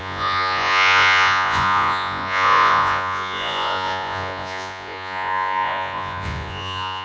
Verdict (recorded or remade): remade